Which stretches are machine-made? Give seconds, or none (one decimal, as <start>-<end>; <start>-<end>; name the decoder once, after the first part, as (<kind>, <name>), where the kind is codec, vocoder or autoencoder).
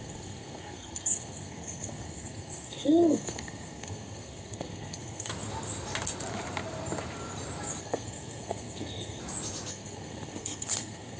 0.0-5.3 (codec, SNAC); 7.8-9.2; 9.7-11.2